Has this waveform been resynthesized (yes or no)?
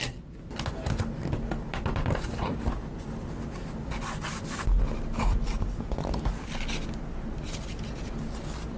no